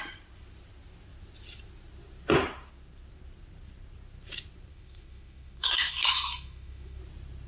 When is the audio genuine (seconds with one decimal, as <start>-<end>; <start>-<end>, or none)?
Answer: 0.0-4.7; 7.0-7.5